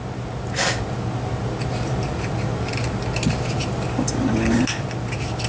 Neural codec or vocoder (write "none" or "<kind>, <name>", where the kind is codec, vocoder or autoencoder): none